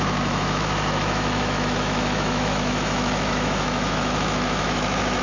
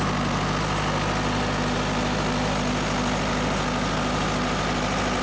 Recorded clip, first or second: second